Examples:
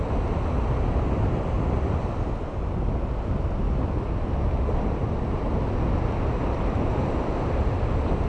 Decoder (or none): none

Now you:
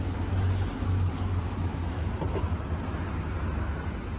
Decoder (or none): none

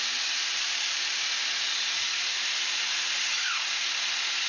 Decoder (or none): none